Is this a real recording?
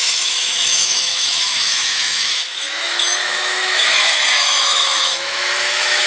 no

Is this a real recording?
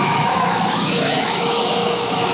no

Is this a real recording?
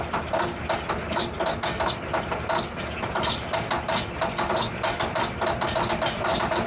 yes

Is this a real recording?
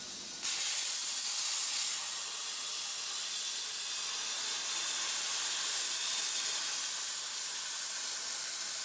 yes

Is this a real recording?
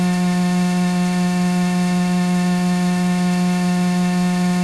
no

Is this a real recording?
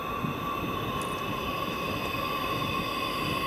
yes